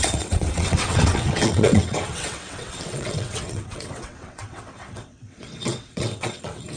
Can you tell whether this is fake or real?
fake